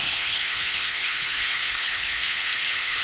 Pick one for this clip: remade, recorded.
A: remade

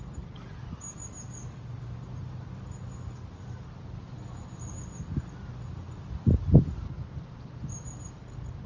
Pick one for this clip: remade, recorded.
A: recorded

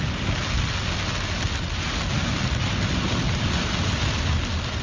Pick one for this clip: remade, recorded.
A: recorded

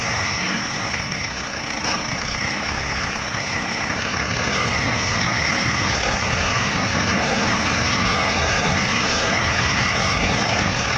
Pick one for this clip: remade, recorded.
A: remade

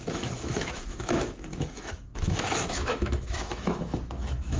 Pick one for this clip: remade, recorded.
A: remade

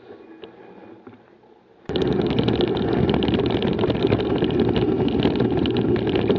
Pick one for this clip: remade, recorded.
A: recorded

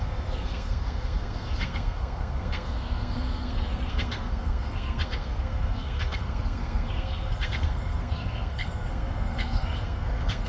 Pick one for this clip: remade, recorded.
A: remade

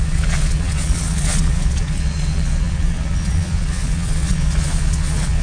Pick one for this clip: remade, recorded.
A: remade